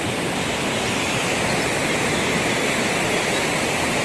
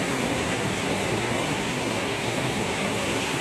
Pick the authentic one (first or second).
first